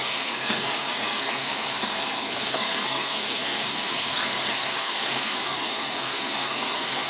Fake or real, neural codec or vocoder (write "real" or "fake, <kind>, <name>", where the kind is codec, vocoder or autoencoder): fake, codec, SNAC